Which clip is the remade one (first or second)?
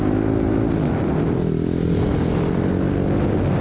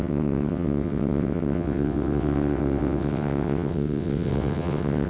second